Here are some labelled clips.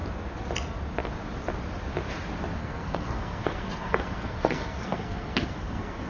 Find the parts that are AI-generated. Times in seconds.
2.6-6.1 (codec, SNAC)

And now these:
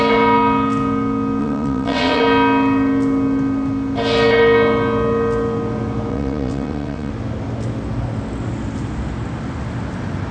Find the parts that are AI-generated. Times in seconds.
1.4-2.2 (vocoder, WaveNeXt); 6.1-7.1

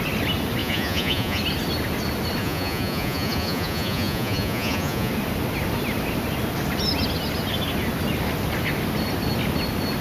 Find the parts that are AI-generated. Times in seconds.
0.6-1.4 (vocoder, Vocos); 2.4-5.1